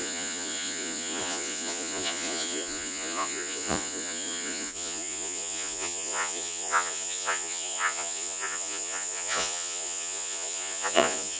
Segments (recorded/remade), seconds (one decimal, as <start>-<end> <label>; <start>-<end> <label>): 0.0-11.4 remade